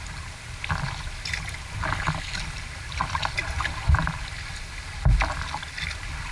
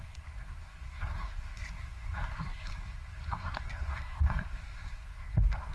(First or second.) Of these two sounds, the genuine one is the first